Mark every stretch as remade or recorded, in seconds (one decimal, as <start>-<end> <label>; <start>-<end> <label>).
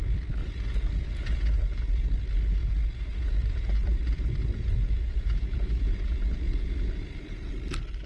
0.0-0.4 recorded; 0.4-2.1 remade; 2.1-2.6 recorded; 2.6-7.5 remade; 7.5-8.1 recorded